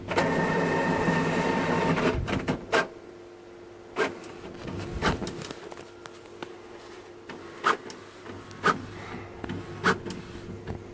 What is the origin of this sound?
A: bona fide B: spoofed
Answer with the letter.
A